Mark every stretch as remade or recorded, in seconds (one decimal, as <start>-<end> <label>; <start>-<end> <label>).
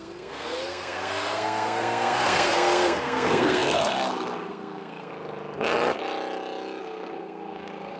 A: 0.0-5.1 remade; 5.1-6.8 recorded; 6.8-8.0 remade